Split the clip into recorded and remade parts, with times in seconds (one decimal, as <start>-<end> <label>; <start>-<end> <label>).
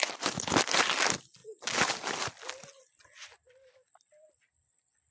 0.0-5.1 recorded